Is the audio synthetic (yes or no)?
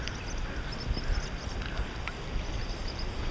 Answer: no